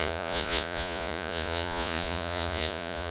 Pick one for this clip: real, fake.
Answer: fake